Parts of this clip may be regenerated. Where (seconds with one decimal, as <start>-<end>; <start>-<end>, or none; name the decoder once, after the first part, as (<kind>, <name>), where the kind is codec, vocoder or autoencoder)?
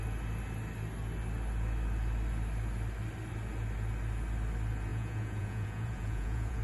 4.9-6.6 (vocoder, Vocos)